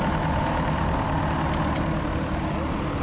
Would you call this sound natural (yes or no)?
yes